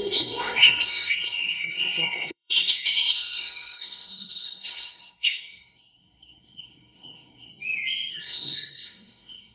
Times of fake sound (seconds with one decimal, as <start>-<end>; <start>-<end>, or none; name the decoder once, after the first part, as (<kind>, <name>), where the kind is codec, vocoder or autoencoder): 0.0-7.5 (codec, SNAC); 8.1-9.5